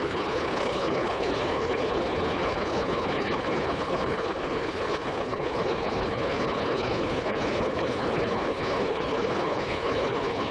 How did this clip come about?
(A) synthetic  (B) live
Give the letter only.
A